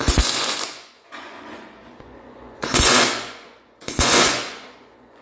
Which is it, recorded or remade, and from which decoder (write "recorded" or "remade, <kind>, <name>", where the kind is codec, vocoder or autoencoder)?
remade, vocoder, Vocos